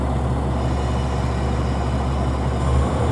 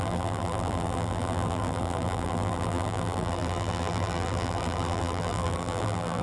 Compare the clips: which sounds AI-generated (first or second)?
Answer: second